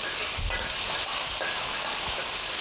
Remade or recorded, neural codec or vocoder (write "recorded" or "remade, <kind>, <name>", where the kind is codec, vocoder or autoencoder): recorded